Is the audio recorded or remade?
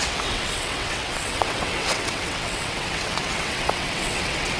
remade